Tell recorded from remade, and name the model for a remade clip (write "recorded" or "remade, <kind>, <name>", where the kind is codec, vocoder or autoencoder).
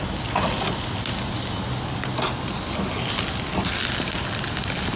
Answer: recorded